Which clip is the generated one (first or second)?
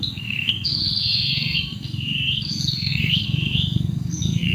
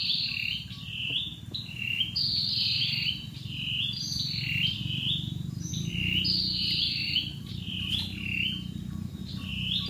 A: first